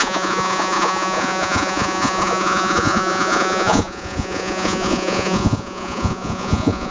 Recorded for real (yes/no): no